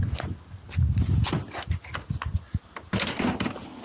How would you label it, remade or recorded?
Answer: recorded